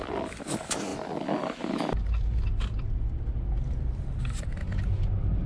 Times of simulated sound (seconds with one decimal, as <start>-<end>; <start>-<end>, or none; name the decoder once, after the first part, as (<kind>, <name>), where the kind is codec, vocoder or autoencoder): none